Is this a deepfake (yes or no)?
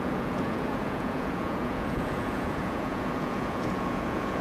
yes